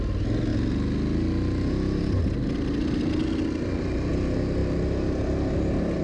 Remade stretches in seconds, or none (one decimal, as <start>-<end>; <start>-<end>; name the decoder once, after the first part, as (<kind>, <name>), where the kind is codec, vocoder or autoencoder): none